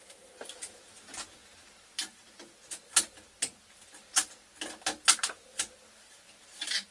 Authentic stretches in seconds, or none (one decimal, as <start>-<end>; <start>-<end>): 0.0-6.9